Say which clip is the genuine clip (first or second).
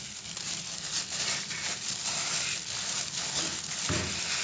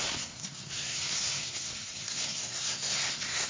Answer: first